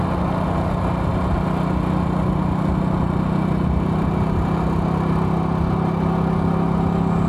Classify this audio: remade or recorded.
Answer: recorded